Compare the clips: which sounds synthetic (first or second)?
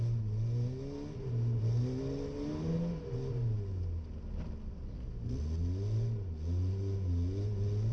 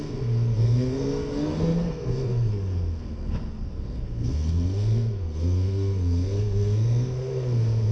second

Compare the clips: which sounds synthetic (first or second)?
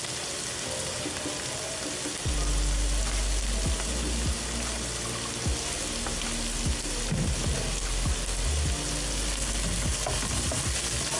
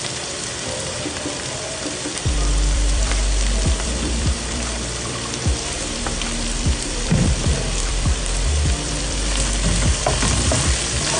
second